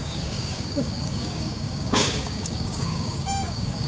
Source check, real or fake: fake